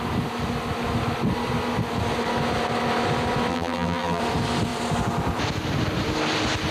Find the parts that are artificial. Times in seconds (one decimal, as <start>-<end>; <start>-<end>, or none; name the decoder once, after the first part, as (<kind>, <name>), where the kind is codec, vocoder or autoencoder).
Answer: 3.5-4.2 (vocoder, BigVGAN v2)